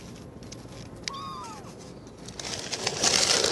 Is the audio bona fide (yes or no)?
yes